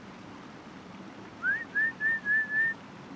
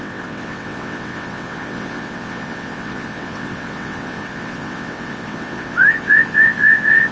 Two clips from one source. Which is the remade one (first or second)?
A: second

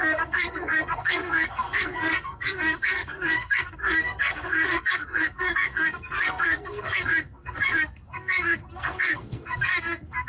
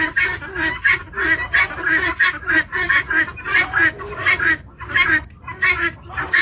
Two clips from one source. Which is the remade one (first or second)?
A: first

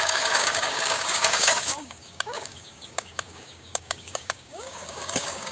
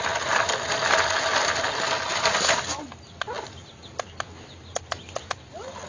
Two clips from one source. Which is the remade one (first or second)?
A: first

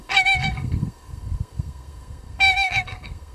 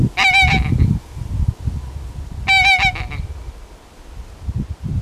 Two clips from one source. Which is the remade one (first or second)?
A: first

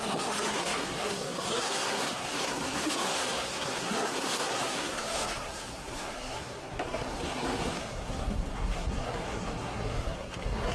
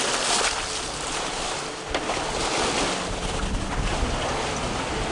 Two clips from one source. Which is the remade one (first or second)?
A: first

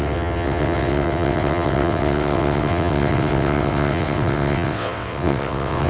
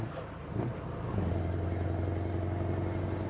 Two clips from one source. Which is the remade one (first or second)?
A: first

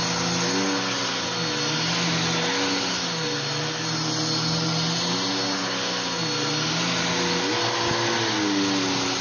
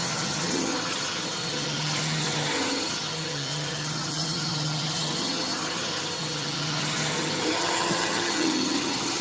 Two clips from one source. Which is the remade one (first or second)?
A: second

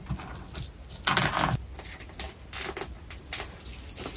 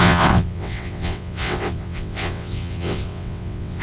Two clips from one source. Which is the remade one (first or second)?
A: second